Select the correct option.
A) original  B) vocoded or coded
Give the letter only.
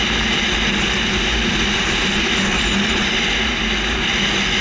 A